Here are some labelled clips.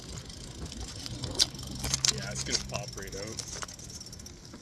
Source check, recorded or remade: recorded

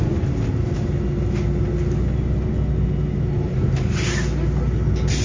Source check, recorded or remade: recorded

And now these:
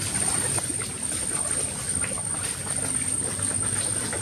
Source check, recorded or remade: recorded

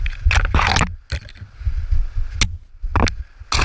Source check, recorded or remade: recorded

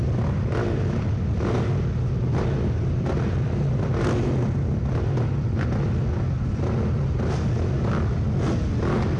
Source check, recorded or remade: recorded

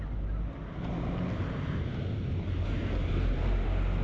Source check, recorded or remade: recorded